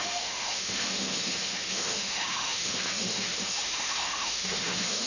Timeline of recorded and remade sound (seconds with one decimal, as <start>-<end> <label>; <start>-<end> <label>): 0.0-5.1 remade